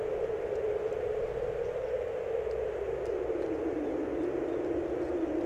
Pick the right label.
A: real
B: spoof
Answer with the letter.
A